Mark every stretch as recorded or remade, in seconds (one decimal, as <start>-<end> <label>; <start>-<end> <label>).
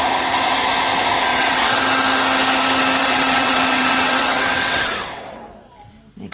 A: 0.0-1.3 recorded; 1.3-1.8 remade; 1.8-3.0 recorded; 3.0-5.4 remade; 5.4-6.3 recorded